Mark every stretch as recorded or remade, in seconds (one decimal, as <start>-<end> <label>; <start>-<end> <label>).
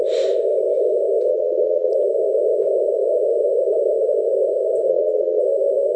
0.0-1.3 recorded; 1.3-1.9 remade; 1.9-4.9 recorded; 4.9-5.4 remade; 5.4-6.0 recorded